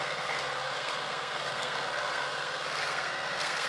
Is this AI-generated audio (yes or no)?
yes